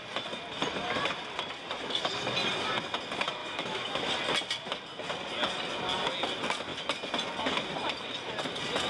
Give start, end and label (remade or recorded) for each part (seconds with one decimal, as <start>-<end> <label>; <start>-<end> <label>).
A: 0.0-3.4 recorded; 3.4-4.1 remade; 4.1-8.9 recorded